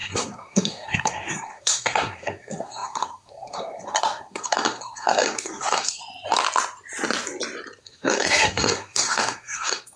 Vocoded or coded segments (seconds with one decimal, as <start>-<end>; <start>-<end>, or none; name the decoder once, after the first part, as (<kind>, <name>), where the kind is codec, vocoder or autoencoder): 0.0-6.0 (codec, SNAC); 7.8-10.0